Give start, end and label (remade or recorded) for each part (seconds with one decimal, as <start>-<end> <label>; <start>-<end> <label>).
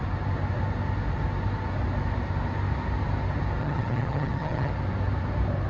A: 0.0-3.6 recorded; 3.6-4.7 remade; 4.7-5.7 recorded